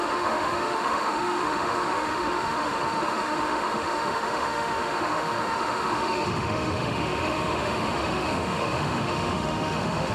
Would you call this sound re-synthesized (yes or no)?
yes